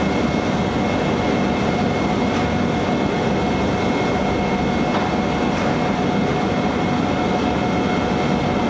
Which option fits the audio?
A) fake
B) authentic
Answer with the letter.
B